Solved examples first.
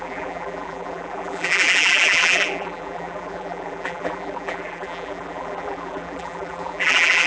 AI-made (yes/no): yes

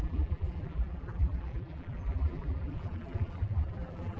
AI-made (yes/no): yes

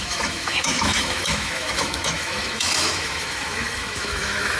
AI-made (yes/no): yes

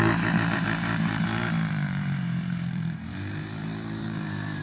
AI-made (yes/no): yes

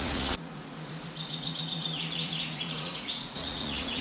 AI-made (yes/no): yes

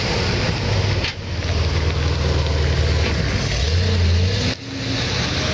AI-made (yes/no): no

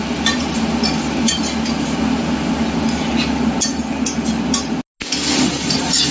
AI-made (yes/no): no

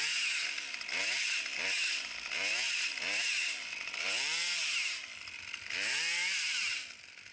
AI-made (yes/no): no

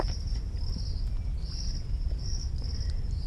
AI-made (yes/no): no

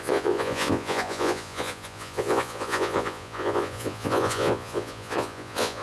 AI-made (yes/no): yes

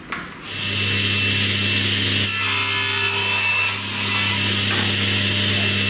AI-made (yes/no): no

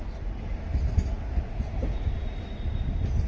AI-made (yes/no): no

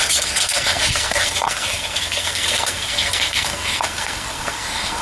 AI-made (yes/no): yes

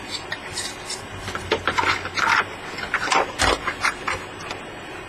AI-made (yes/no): no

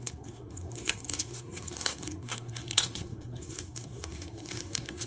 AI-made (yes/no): yes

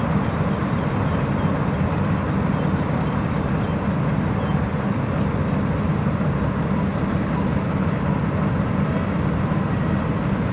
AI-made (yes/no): no